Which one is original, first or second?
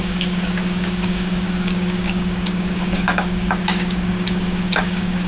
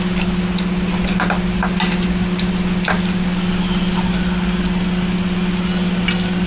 second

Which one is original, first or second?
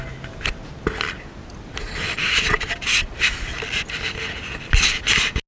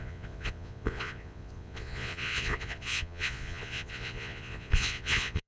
first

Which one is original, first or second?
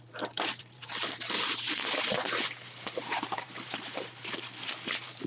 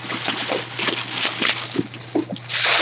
second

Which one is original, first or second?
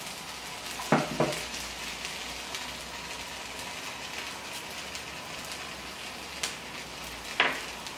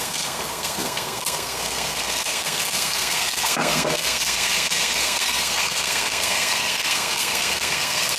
first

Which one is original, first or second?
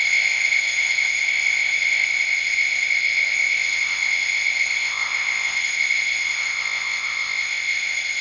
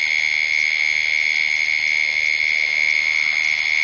second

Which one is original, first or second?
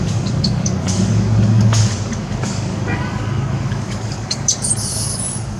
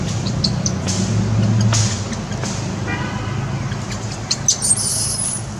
second